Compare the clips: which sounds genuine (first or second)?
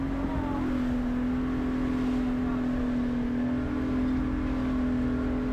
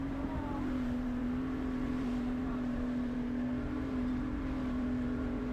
first